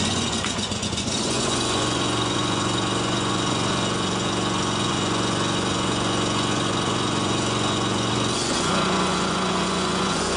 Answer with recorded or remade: remade